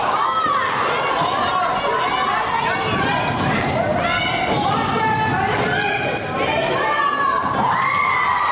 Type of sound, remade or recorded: recorded